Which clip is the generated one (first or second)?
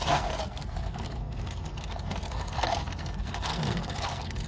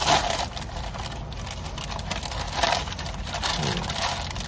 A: first